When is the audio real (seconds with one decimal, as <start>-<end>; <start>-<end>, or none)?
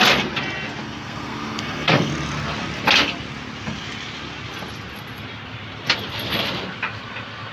0.0-0.8; 2.1-7.5